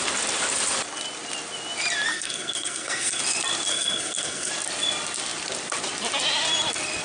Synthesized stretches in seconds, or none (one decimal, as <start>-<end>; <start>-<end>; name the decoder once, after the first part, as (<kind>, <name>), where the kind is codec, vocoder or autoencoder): 2.1-3.2 (codec, SNAC); 3.7-4.5